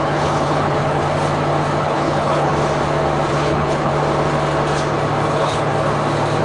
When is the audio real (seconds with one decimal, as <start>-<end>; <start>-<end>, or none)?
1.0-1.8; 2.5-3.3; 3.9-5.3; 5.7-6.4